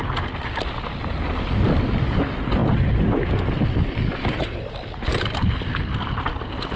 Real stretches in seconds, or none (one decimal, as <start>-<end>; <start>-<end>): 0.0-6.8